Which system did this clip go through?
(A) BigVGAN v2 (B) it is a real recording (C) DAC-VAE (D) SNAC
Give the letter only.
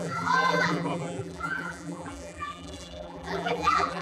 A